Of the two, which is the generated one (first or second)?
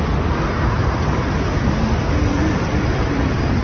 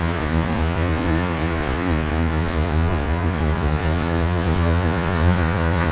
second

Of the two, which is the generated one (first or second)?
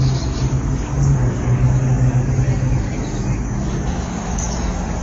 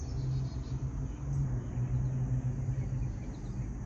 first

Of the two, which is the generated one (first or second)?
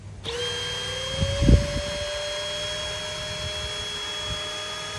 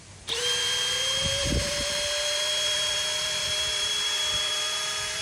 second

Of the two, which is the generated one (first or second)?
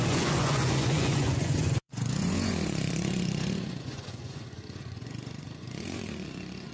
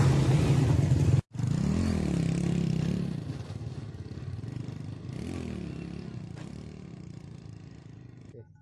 first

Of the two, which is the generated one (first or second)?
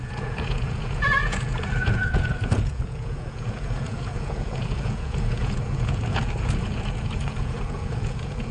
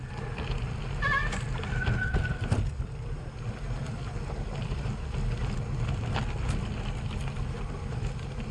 first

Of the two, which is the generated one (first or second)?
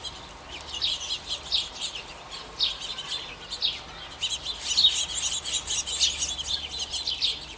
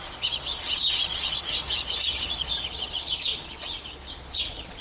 second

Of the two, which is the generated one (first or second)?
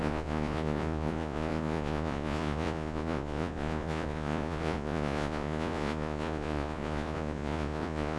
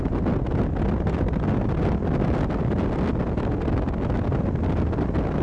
first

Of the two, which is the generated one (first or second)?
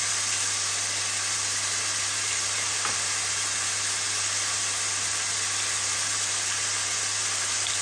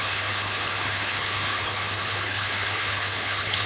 second